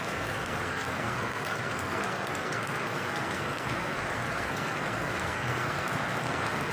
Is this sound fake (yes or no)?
yes